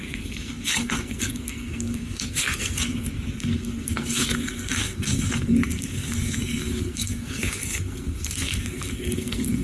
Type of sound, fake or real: fake